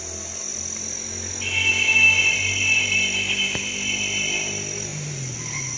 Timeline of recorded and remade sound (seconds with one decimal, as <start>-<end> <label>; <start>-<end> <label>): 0.0-4.9 recorded; 4.9-5.8 remade